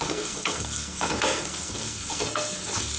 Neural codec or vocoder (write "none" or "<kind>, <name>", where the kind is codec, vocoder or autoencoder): codec, SNAC